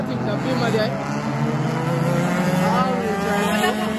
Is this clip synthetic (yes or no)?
no